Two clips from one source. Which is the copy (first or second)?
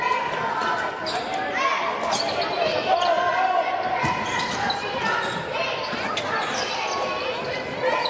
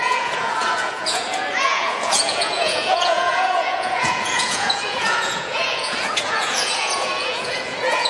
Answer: second